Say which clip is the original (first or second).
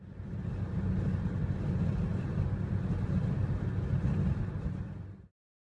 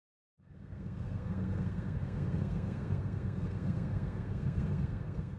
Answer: first